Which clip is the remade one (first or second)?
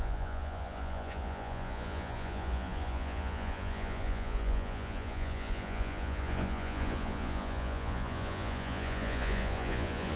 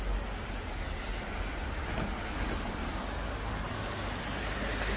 first